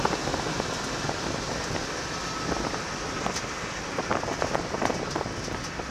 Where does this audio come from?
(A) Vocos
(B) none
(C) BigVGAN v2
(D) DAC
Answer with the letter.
B